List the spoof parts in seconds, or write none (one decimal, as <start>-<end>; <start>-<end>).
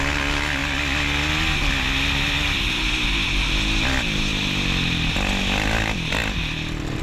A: none